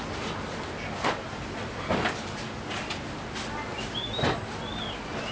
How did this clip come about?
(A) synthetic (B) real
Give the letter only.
B